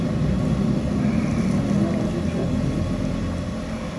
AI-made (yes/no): no